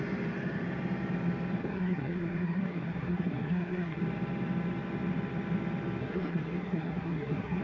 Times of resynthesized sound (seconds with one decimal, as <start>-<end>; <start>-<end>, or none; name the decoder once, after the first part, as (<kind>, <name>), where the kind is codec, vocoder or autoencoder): 1.6-4.0 (codec, SNAC); 6.0-7.6